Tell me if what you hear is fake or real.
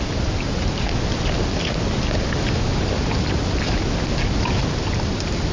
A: real